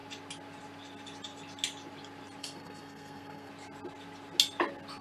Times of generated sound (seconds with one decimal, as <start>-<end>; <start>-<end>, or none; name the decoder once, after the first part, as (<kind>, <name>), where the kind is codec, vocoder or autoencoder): 2.4-3.5 (codec, SNAC)